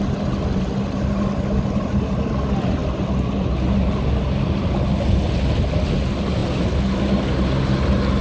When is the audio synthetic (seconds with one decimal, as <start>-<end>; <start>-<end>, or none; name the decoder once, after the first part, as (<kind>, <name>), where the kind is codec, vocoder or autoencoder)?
none